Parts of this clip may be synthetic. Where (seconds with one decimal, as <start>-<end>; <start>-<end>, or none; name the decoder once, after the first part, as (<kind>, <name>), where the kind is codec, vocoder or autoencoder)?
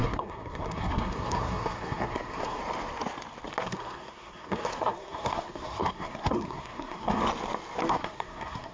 0.0-2.6 (codec, SNAC); 3.6-7.2; 7.9-8.7